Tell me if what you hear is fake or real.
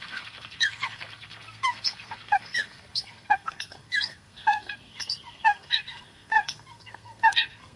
fake